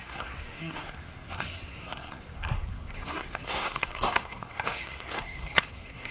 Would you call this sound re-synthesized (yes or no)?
yes